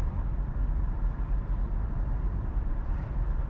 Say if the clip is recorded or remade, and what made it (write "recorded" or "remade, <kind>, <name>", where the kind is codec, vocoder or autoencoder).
remade, vocoder, BigVGAN v2